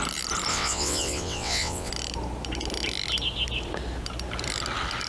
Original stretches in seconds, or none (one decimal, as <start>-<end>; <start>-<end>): 0.0-0.5; 1.9-5.1